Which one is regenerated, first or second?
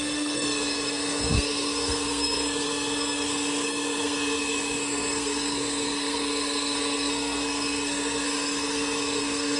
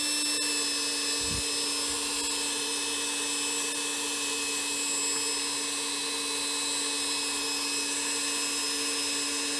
first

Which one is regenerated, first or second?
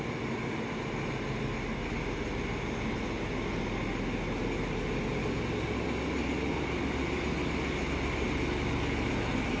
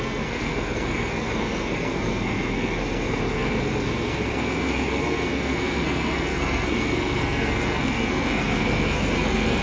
second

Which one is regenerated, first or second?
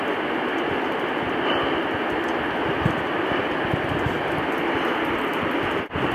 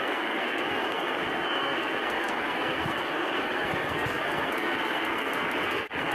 second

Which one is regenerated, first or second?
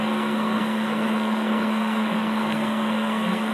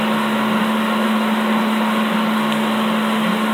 first